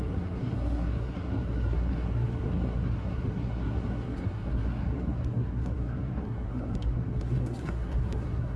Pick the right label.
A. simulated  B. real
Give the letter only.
A